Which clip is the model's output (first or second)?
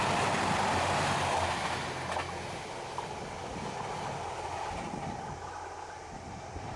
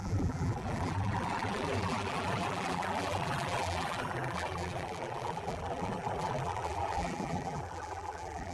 second